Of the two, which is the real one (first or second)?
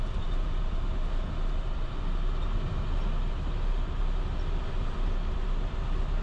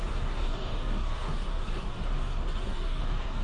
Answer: first